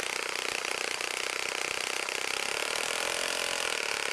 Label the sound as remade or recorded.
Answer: recorded